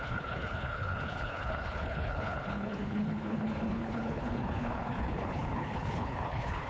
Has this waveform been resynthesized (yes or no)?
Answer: yes